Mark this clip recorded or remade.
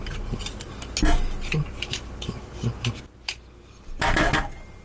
recorded